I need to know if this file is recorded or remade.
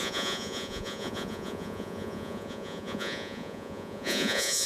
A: remade